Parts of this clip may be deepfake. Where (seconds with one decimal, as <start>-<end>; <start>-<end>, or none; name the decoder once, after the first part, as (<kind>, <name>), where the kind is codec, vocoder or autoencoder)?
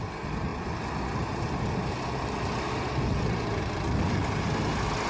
none